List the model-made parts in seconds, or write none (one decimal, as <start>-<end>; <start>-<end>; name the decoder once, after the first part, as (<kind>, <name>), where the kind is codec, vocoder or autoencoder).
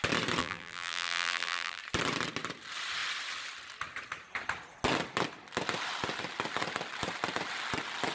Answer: 0.4-1.8 (vocoder, BigVGAN v2)